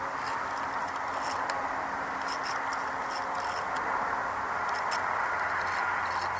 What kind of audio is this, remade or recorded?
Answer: recorded